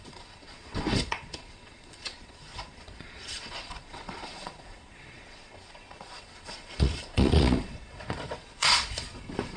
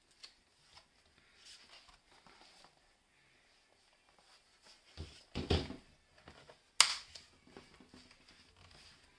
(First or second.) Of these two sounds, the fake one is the first